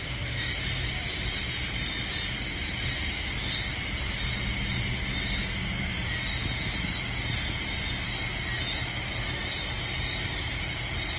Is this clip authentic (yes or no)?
yes